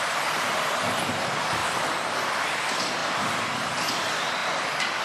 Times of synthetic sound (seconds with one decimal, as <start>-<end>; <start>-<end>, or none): 1.6-2.5; 3.0-3.9; 4.4-5.0